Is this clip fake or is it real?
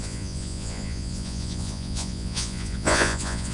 fake